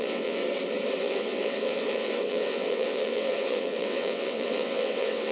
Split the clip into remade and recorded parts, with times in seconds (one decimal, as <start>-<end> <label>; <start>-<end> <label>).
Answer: 0.0-0.4 remade; 0.4-1.0 recorded; 1.0-5.3 remade